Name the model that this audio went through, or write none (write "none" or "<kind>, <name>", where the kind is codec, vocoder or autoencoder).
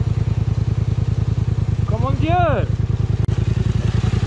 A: none